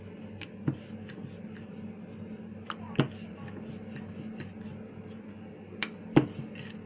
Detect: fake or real real